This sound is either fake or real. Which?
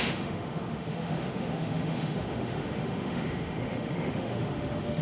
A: fake